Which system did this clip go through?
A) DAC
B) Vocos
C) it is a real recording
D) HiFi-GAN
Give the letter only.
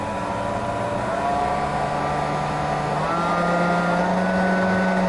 C